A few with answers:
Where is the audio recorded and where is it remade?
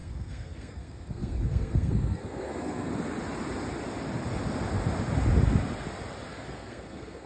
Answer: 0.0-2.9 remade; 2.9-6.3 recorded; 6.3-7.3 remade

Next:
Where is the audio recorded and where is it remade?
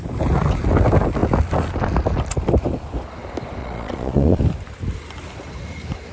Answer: 0.0-3.6 recorded; 3.6-4.4 remade; 4.4-6.1 recorded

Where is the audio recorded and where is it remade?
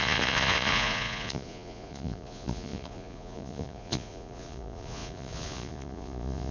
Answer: 0.0-6.5 remade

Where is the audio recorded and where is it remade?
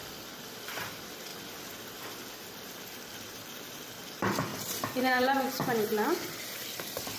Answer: 0.0-1.3 remade; 1.3-2.4 recorded; 2.4-4.5 remade; 4.5-5.0 recorded; 5.0-7.2 remade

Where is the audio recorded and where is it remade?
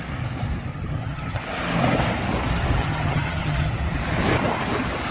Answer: 0.0-0.7 recorded; 0.7-1.4 remade; 1.4-2.8 recorded; 2.8-3.7 remade; 3.7-5.1 recorded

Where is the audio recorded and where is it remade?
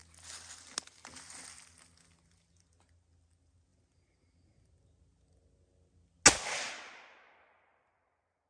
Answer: 0.0-8.5 recorded